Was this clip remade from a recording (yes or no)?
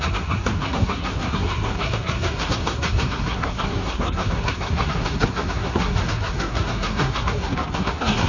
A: yes